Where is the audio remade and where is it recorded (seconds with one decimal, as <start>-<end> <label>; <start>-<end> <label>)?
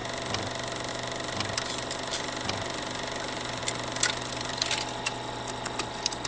0.0-6.3 recorded